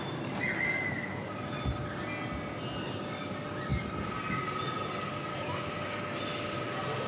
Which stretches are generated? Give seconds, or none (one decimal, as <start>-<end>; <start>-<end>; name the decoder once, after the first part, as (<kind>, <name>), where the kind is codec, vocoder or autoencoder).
5.3-6.2 (autoencoder, DAC-VAE)